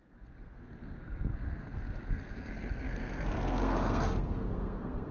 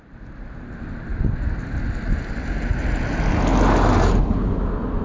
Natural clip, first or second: second